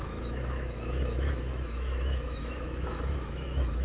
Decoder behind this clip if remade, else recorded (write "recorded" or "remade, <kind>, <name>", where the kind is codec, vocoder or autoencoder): remade, autoencoder, DAC-VAE